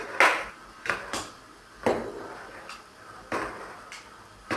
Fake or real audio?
real